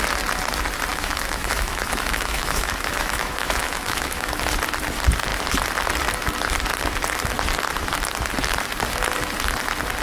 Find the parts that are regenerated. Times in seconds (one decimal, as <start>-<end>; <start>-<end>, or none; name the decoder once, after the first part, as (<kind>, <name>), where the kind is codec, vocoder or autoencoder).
0.9-4.3 (autoencoder, DAC-VAE)